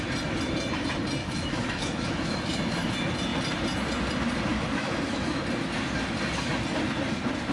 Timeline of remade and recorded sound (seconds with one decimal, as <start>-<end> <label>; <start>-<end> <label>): 0.0-1.2 recorded; 1.2-2.9 remade; 2.9-4.5 recorded; 4.5-5.4 remade; 5.4-7.5 recorded